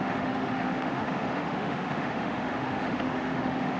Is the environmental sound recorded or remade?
remade